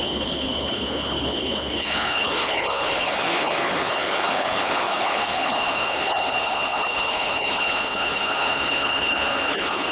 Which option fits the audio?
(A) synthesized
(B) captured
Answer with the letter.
A